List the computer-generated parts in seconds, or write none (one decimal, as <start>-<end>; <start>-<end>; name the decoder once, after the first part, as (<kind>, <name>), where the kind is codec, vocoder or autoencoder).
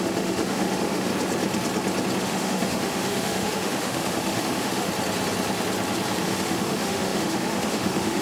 0.0-1.1 (autoencoder, DAC-VAE); 2.2-4.9; 6.2-8.2